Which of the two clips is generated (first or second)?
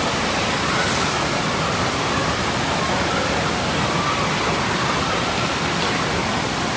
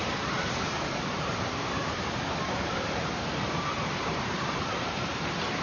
second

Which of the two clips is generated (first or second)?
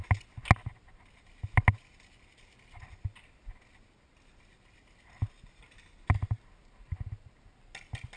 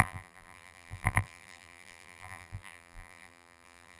second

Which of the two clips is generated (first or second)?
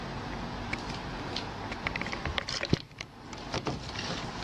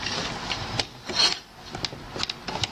first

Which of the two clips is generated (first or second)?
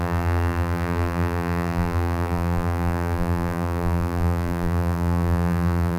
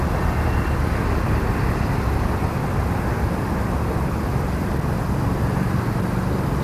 first